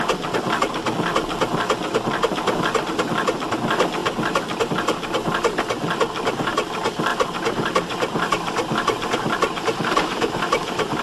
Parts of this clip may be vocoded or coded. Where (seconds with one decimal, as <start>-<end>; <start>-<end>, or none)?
7.1-11.0